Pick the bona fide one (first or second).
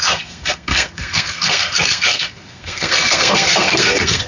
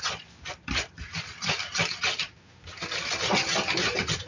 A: second